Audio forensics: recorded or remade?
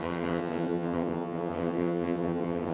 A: remade